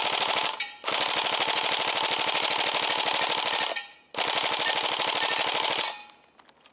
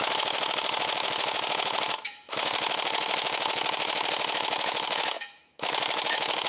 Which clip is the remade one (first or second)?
second